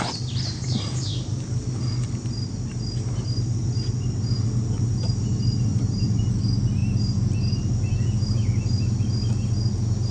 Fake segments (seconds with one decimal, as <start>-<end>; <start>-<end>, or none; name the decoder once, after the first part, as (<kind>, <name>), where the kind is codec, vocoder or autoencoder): 5.7-6.2 (vocoder, BigVGAN v2)